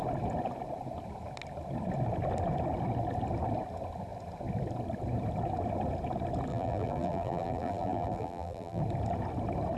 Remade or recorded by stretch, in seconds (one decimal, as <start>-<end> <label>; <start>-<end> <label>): 0.0-6.5 recorded; 6.5-8.8 remade; 8.8-9.8 recorded